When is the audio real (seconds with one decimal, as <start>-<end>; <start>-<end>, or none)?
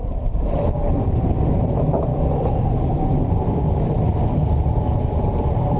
4.1-5.2